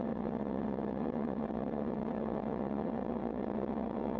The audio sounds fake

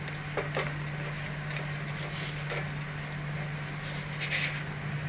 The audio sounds real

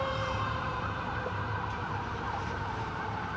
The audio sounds fake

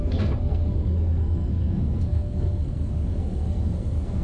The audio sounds fake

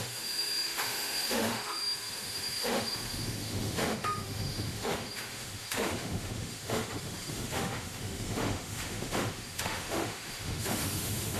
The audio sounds fake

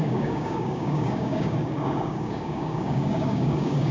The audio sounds fake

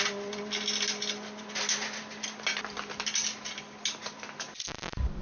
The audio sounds real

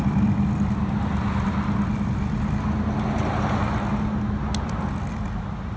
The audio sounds real